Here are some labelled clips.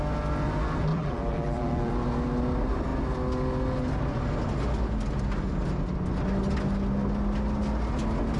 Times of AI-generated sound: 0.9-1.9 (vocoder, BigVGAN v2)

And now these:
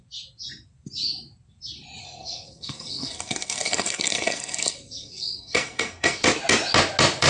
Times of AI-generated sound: 2.0-6.2 (codec, SNAC)

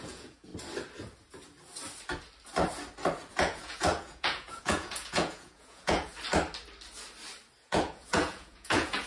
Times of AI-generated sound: 0.0-0.5 (vocoder, Vocos); 3.3-6.1; 7.6-9.1